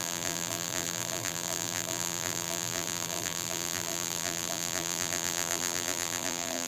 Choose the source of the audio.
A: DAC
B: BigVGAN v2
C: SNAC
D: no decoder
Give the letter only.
B